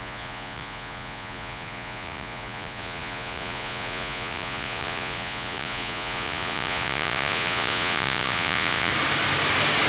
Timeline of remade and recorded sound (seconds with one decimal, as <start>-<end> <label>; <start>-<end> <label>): 0.0-8.9 remade; 8.9-9.9 recorded